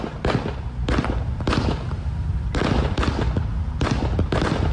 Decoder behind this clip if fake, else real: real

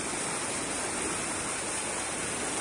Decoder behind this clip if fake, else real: real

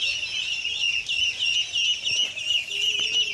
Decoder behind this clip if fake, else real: real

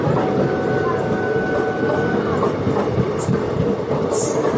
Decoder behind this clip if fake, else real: real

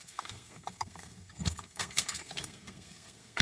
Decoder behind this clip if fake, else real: fake, codec, SNAC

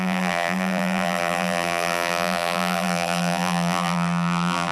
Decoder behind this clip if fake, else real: fake, vocoder, BigVGAN v2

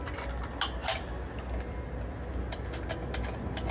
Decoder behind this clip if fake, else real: real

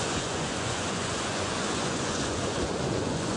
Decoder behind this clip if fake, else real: fake, vocoder, Vocos